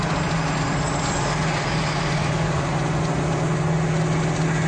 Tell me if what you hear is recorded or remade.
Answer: recorded